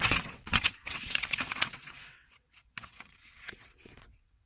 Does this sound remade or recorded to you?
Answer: remade